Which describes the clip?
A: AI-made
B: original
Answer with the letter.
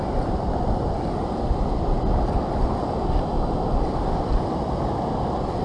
B